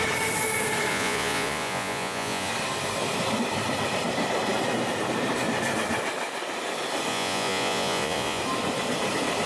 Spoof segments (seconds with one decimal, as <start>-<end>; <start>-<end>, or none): 0.9-2.5; 7.1-8.4